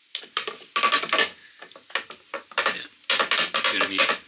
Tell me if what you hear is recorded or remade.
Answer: recorded